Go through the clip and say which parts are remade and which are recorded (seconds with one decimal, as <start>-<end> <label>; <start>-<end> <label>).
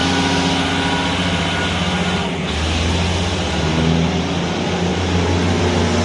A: 0.0-6.0 recorded